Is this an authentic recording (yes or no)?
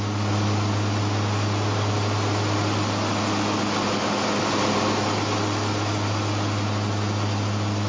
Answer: yes